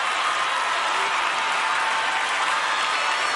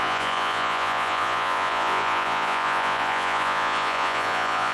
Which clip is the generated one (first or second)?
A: second